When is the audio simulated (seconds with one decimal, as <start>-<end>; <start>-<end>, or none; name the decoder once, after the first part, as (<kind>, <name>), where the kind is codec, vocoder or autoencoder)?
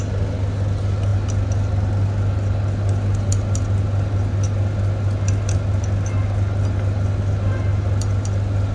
none